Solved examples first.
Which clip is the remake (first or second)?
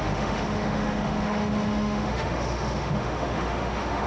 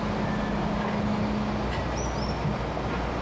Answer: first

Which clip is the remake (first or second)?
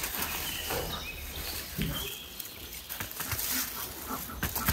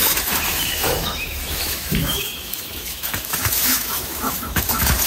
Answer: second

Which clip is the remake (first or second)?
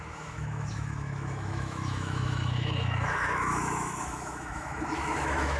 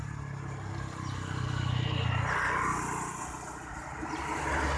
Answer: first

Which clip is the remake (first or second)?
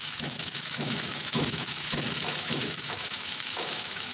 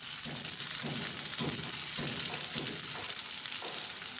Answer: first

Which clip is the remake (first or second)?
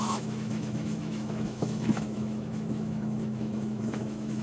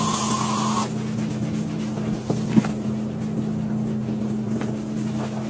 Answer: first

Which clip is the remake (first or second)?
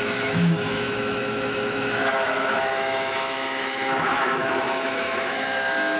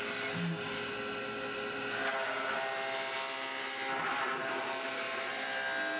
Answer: first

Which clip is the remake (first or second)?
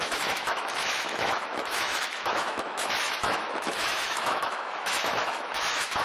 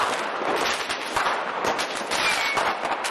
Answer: first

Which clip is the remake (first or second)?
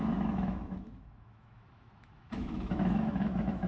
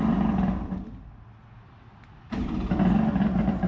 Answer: first